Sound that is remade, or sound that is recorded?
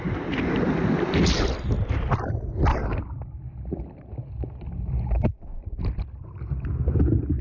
recorded